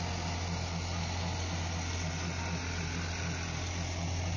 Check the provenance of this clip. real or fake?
real